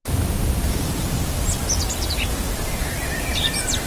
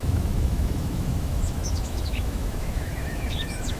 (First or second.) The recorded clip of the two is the first